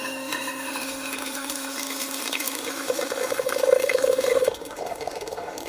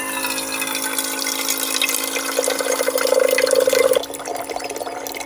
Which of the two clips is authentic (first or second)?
second